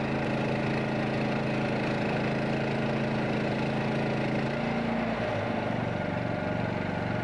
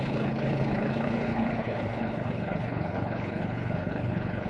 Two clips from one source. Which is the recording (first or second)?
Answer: first